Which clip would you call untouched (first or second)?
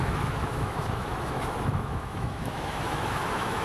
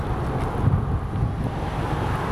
second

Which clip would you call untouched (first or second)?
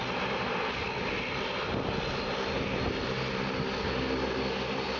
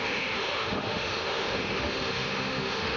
first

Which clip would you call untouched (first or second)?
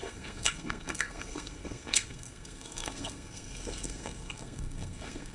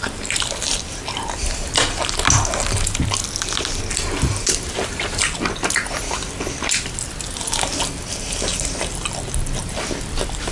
second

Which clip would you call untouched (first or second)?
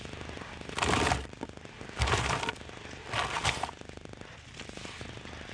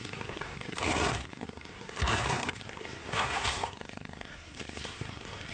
first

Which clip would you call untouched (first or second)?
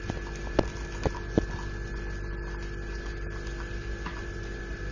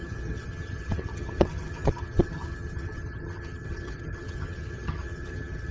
first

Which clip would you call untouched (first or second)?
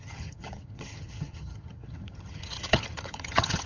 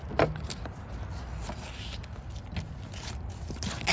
second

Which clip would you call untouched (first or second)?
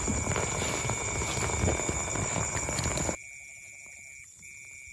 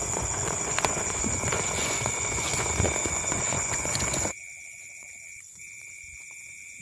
first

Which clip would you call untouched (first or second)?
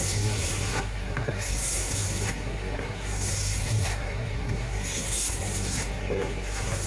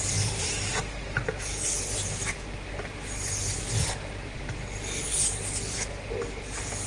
second